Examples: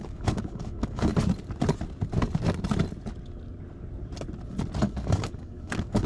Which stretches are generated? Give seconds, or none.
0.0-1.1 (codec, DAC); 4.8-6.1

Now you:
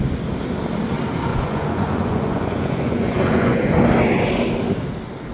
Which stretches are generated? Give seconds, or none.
1.3-3.8 (vocoder, Vocos)

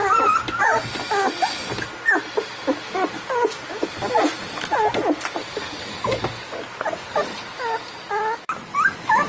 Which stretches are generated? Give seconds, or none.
5.4-6.2 (codec, DAC)

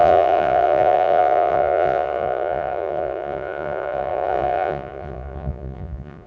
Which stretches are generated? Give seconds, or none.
0.0-6.3 (vocoder, Vocos)

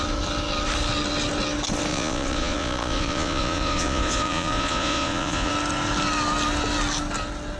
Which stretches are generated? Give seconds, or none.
1.9-5.5 (vocoder, Vocos)

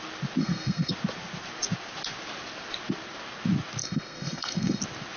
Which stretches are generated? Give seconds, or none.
0.4-0.9 (codec, SNAC); 3.8-4.8